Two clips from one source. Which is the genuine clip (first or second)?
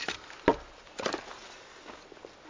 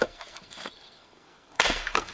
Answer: first